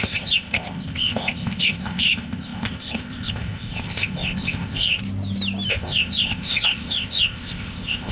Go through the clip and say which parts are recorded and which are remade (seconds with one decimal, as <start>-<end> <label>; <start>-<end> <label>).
0.0-5.0 remade; 5.0-5.7 recorded; 5.7-8.1 remade